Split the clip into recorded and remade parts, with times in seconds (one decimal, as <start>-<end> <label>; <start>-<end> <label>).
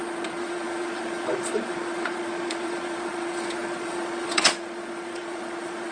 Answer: 0.0-5.9 remade